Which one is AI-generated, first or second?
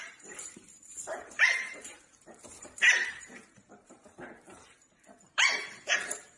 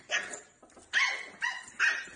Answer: first